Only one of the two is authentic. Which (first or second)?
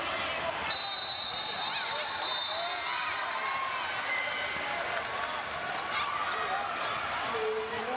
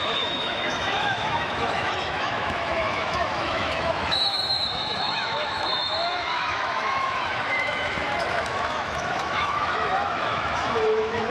first